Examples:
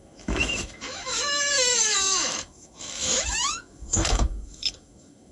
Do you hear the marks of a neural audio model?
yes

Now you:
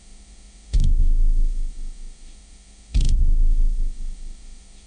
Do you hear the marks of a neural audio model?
yes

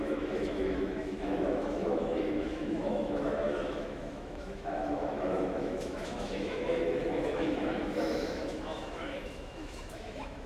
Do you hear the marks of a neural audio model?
yes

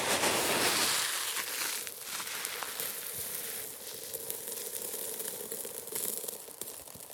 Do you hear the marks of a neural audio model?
no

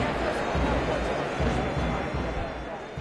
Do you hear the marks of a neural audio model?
no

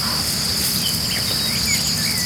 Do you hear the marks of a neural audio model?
no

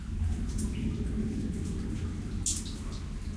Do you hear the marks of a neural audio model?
no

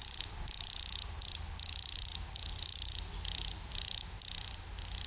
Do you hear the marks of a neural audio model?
no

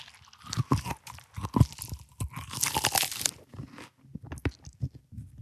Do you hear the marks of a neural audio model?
no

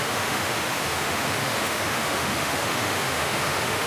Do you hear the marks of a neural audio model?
yes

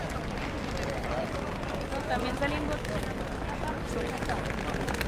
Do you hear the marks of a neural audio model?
no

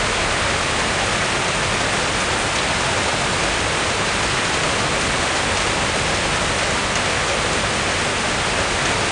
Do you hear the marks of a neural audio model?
no